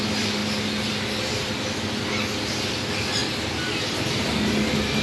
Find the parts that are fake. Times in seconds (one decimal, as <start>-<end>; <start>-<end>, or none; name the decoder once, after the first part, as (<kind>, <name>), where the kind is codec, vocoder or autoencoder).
none